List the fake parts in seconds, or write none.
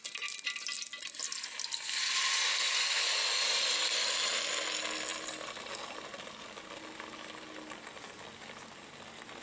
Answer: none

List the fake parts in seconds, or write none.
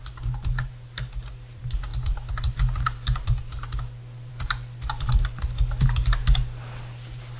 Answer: none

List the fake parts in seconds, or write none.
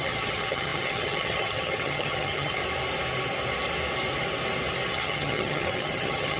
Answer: 0.0-2.6 (vocoder, HiFi-GAN); 4.9-6.4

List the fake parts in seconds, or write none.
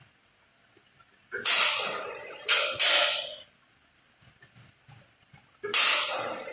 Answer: none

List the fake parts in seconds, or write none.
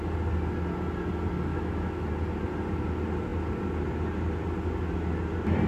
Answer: 1.5-2.1 (autoencoder, DAC-VAE)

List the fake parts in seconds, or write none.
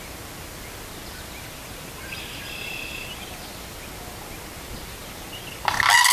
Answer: none